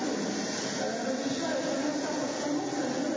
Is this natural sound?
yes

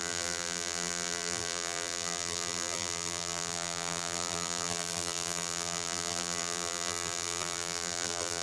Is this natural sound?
no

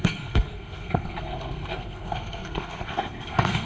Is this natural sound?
no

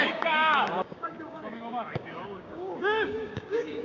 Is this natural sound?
no